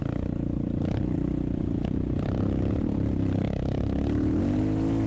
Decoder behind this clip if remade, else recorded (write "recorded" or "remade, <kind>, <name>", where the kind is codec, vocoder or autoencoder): recorded